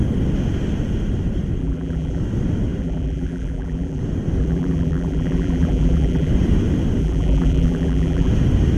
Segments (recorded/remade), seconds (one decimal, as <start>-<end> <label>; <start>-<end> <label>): 0.0-1.6 recorded; 1.6-2.2 remade; 2.2-2.8 recorded; 2.8-4.0 remade; 4.0-4.4 recorded; 4.4-6.3 remade; 6.3-7.0 recorded; 7.0-8.3 remade; 8.3-8.8 recorded